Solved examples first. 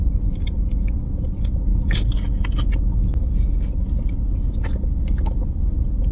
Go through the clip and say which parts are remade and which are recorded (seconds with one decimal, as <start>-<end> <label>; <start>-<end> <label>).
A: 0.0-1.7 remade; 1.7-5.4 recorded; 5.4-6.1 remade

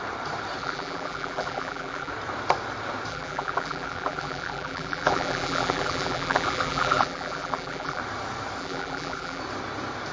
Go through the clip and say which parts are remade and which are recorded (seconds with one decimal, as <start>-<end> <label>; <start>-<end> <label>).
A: 0.0-0.6 recorded; 0.6-2.1 remade; 2.1-3.1 recorded; 3.1-8.0 remade; 8.0-8.6 recorded; 8.6-9.4 remade; 9.4-10.1 recorded

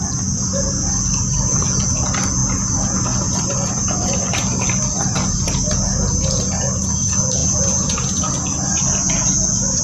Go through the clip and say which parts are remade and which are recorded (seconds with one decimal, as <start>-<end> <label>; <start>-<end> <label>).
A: 0.0-9.8 recorded

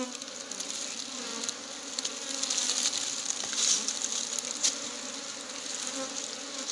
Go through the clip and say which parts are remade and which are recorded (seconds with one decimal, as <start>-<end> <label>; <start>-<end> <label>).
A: 0.0-6.7 recorded